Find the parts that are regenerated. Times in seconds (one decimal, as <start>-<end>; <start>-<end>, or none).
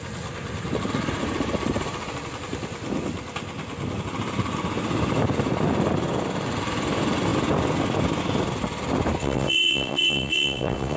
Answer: 9.2-11.0